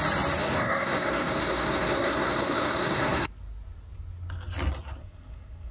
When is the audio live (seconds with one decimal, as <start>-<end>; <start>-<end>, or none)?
0.0-0.4; 3.3-5.0